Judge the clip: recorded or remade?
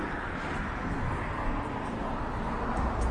recorded